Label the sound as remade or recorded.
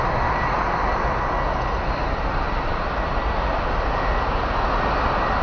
recorded